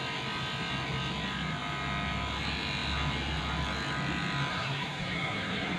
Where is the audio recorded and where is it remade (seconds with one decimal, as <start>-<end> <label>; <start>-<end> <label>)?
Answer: 0.0-4.5 recorded; 4.5-5.8 remade